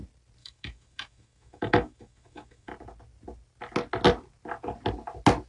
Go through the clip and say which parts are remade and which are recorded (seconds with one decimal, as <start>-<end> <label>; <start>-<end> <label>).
0.0-0.4 recorded; 0.4-2.7 remade; 2.7-5.5 recorded